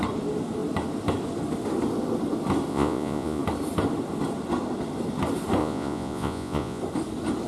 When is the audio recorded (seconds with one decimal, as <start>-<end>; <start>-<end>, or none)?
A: 0.0-2.7; 3.4-5.6; 6.8-7.5

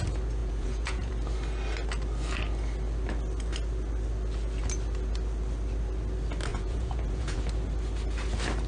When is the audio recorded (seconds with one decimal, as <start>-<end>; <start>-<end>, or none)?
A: 0.0-0.4; 1.1-6.5; 7.4-8.7

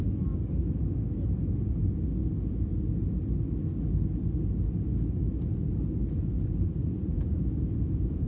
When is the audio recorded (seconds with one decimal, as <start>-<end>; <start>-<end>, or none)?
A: 0.0-6.8